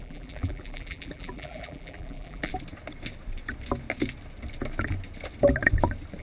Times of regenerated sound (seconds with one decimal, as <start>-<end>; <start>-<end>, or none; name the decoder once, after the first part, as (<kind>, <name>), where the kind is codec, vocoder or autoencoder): 0.0-2.5 (vocoder, BigVGAN v2)